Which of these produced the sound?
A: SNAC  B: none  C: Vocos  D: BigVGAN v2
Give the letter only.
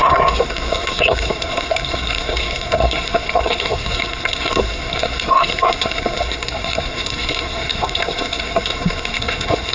A